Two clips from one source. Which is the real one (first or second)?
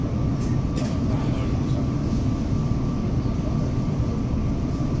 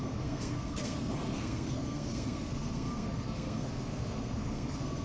first